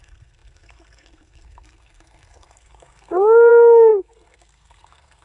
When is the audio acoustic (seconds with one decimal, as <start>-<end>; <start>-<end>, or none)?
none